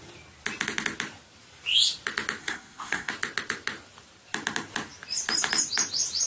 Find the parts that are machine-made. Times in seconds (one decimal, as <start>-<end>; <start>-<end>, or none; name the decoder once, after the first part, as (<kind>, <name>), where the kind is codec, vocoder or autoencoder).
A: 2.4-3.1 (codec, SNAC)